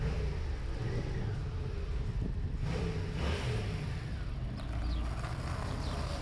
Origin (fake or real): real